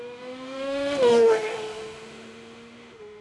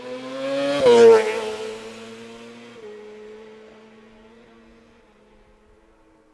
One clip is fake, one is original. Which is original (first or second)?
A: second